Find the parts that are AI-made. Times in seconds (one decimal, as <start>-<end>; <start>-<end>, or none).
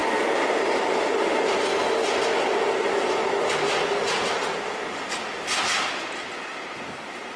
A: none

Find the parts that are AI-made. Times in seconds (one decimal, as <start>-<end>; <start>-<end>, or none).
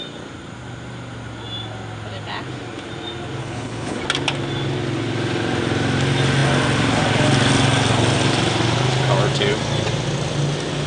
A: 3.4-4.0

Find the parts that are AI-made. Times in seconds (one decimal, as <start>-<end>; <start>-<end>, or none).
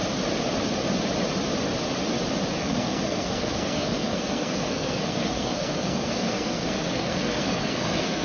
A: 2.6-8.2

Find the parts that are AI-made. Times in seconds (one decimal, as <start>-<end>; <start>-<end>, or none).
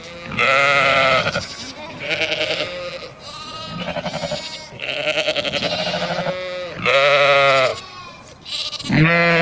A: 7.7-8.8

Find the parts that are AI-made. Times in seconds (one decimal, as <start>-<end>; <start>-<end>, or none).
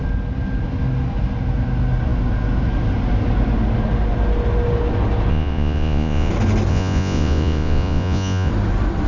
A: 5.3-6.3; 6.7-8.5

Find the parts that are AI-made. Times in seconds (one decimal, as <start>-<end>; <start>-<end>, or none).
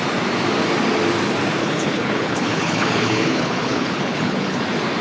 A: 1.6-4.6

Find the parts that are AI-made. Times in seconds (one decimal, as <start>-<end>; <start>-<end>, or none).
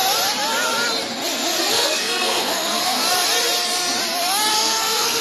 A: 1.6-3.0; 4.5-5.2